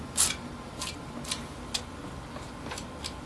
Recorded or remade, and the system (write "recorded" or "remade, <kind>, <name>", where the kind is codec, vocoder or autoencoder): recorded